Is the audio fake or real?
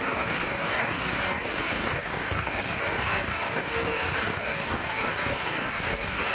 fake